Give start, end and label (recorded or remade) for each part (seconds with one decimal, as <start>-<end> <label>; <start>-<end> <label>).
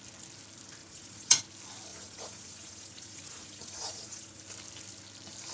0.0-0.8 recorded; 0.8-1.4 remade; 1.4-1.9 recorded; 1.9-4.4 remade; 4.4-5.5 recorded